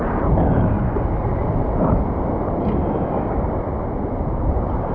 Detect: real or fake real